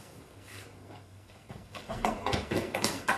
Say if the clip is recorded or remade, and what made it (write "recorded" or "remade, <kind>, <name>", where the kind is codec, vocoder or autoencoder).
remade, codec, SNAC